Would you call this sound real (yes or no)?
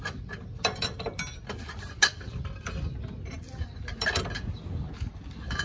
yes